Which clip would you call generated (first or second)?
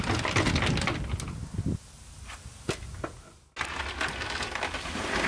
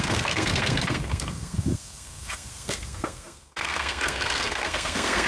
second